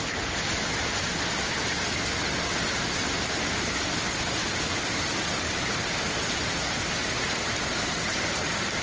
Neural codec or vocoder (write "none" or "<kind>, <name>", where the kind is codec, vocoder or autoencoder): none